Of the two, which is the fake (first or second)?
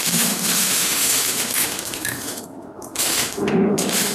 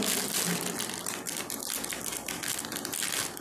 first